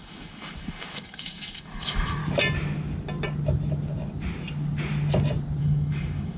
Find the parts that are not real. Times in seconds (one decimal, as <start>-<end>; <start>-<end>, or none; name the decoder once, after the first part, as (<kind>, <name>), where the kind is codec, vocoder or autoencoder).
0.0-2.2 (autoencoder, DAC-VAE); 5.6-6.4